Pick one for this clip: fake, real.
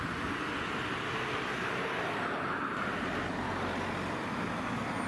real